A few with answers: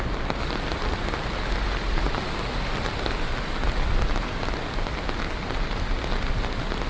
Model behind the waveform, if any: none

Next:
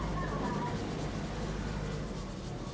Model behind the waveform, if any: none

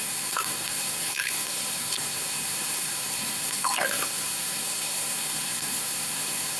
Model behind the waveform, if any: codec, SNAC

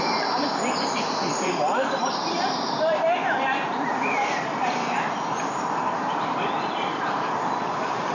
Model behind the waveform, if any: vocoder, BigVGAN v2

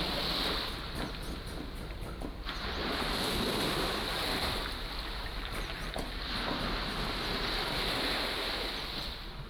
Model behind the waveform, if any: none